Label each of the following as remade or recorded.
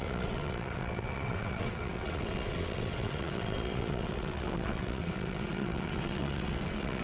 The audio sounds remade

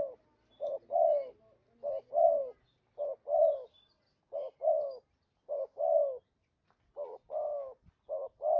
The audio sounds recorded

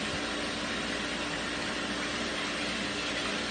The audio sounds recorded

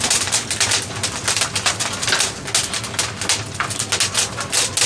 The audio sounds recorded